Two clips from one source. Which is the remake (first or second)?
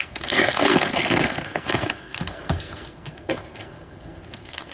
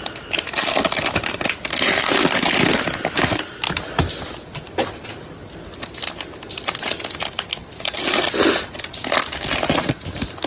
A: first